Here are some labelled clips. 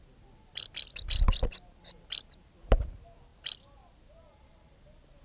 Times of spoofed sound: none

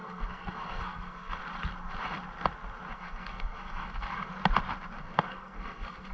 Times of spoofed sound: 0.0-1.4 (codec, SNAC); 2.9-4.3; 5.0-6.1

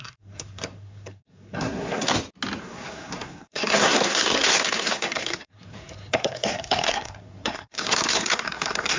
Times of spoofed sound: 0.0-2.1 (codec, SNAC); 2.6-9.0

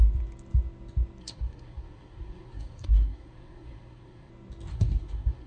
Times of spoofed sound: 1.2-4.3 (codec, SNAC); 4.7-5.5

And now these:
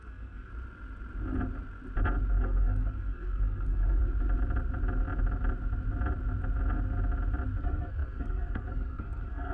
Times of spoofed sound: 0.0-0.5 (codec, SNAC); 2.4-4.0; 7.6-9.5